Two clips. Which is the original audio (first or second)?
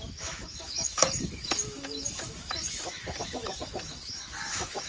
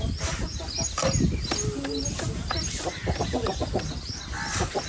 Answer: second